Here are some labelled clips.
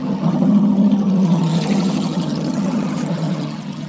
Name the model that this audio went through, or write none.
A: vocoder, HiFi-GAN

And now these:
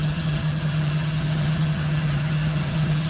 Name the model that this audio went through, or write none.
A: vocoder, HiFi-GAN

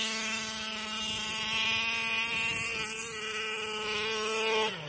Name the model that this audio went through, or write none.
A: none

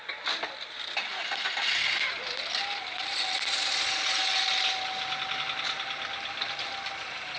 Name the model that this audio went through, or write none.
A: none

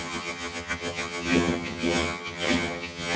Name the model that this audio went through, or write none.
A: vocoder, HiFi-GAN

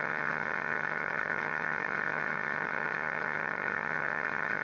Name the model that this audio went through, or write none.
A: vocoder, HiFi-GAN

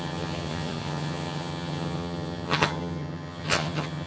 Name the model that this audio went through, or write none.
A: vocoder, HiFi-GAN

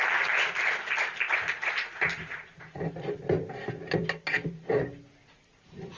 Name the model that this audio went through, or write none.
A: none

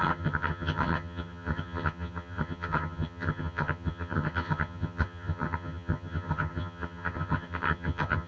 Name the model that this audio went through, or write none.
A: vocoder, HiFi-GAN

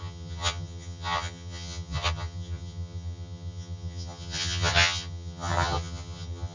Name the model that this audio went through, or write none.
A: vocoder, HiFi-GAN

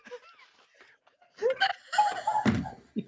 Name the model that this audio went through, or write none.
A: none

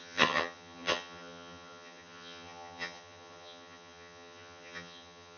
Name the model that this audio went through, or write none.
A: vocoder, HiFi-GAN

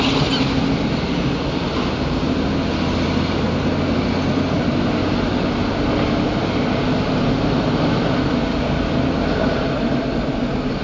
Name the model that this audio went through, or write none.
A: none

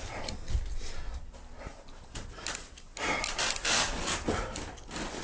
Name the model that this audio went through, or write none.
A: none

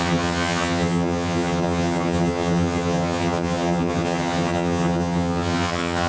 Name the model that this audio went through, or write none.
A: vocoder, HiFi-GAN